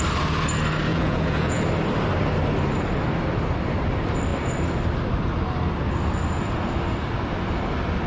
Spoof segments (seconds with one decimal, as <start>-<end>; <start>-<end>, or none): 0.9-1.6